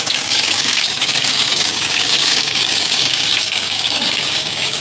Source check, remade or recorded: remade